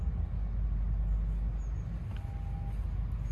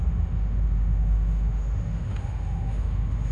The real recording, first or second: first